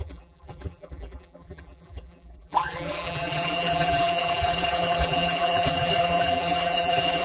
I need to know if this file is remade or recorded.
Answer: remade